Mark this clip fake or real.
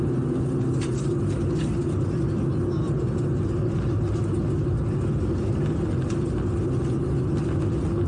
real